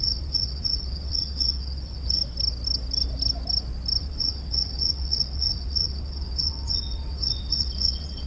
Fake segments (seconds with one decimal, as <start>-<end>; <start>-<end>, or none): 0.0-2.2; 4.0-8.3